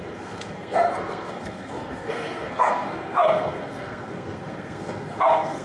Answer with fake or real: fake